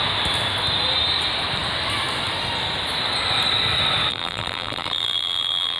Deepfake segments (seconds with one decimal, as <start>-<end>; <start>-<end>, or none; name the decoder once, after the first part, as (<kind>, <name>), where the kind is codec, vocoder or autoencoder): 4.1-5.8 (vocoder, BigVGAN v2)